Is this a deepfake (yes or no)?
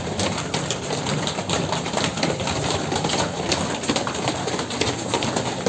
yes